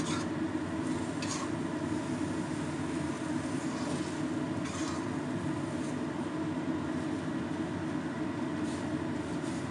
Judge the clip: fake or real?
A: real